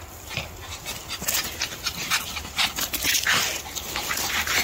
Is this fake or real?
real